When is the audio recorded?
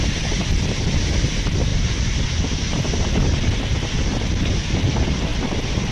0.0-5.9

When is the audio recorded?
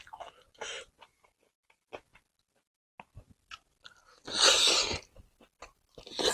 0.0-6.3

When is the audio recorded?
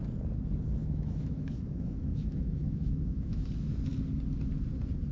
0.0-0.8; 3.5-5.1